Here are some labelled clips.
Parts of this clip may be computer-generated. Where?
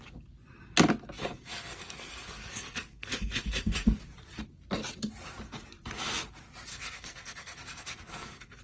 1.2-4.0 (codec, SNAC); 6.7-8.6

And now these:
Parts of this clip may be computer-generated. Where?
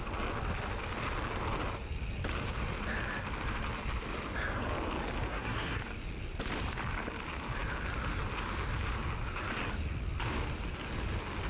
5.3-5.8 (codec, SNAC)